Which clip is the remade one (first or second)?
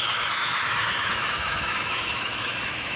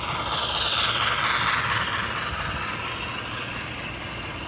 first